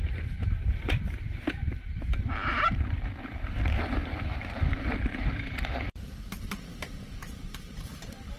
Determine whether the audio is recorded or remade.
remade